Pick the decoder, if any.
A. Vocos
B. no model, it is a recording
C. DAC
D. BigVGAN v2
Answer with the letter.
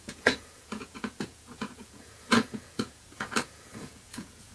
A